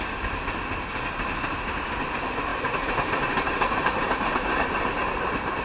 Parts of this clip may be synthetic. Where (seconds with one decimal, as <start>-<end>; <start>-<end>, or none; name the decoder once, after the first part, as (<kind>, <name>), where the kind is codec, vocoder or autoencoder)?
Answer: 2.5-5.0 (vocoder, BigVGAN v2)